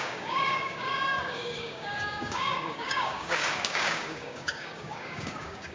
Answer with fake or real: fake